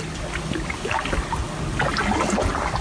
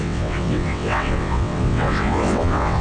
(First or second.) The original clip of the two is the first